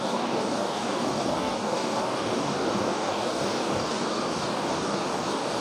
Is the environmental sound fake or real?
fake